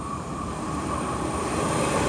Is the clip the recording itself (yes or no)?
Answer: no